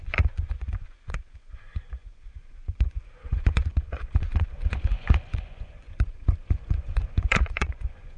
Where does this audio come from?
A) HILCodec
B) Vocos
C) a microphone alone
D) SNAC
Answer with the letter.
B